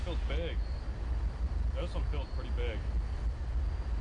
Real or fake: real